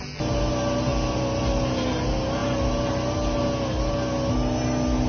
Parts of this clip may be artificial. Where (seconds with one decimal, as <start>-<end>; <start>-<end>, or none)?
none